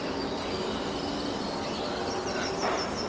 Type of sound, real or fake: real